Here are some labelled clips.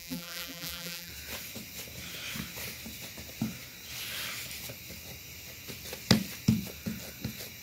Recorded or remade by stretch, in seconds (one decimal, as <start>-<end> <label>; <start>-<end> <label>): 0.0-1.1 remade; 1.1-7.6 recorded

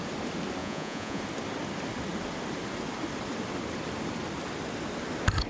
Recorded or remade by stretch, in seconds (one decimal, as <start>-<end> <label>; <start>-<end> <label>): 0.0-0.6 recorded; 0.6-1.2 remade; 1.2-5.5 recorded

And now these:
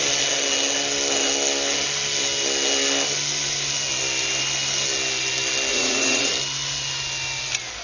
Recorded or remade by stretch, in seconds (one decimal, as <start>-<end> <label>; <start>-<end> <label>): 0.0-5.7 recorded; 5.7-6.3 remade; 6.3-7.8 recorded

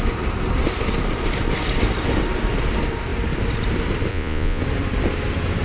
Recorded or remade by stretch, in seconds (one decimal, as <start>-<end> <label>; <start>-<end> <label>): 0.0-4.1 recorded; 4.1-4.6 remade; 4.6-5.6 recorded